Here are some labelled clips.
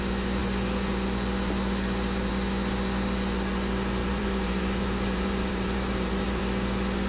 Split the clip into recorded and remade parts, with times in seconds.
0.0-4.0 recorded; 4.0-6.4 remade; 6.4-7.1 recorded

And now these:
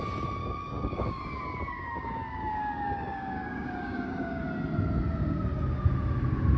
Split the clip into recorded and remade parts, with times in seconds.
0.0-0.4 recorded; 0.4-4.4 remade; 4.4-6.6 recorded